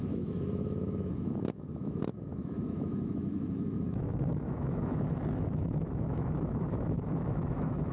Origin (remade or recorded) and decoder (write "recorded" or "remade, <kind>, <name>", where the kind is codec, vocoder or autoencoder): remade, autoencoder, DAC-VAE